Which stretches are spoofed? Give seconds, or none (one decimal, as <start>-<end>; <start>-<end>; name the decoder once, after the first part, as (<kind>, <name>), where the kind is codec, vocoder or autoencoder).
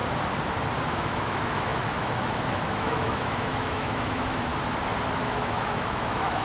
0.9-4.5 (autoencoder, DAC-VAE); 5.2-6.4